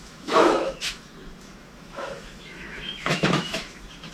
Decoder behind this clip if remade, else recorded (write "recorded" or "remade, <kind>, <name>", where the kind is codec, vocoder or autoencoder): remade, autoencoder, DAC-VAE